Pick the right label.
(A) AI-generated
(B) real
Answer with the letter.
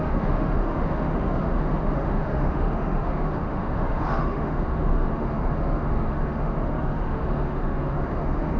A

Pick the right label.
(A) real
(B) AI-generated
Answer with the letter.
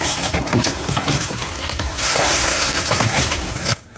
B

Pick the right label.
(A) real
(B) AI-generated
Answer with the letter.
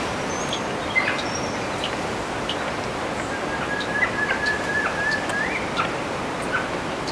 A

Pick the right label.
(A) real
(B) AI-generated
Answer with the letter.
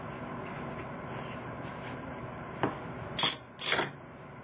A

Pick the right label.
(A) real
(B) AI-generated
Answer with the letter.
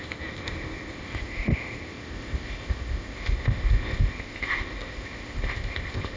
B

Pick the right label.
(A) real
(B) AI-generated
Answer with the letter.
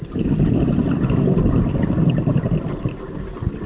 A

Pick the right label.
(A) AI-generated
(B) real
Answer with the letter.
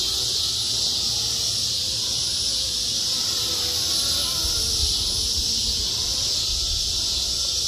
B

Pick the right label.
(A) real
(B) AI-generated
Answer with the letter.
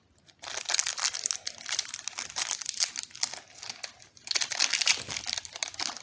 A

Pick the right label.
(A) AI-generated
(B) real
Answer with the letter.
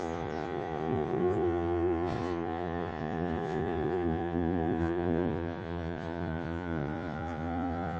A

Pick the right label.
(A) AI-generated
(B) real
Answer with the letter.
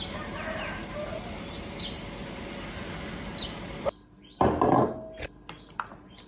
B